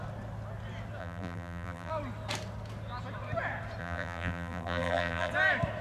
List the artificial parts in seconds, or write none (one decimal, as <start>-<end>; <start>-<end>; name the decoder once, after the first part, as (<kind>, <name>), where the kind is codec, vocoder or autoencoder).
1.0-1.9 (vocoder, BigVGAN v2); 3.8-5.3